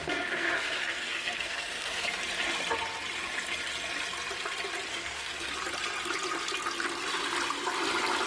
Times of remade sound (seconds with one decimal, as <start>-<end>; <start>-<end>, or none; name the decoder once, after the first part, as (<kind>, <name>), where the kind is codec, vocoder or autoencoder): 0.0-2.2 (codec, SNAC); 4.9-5.5